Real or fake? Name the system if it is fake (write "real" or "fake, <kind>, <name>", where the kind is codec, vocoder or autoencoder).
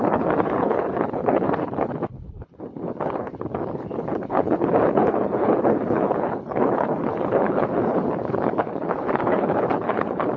fake, codec, HILCodec